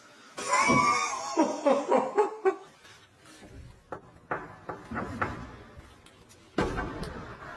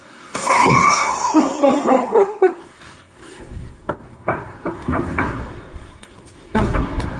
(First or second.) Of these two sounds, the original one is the first